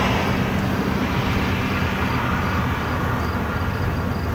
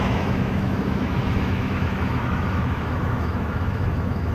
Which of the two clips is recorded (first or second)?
first